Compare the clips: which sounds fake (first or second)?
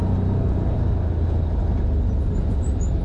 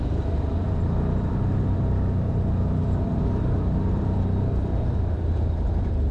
second